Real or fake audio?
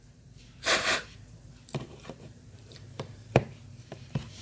fake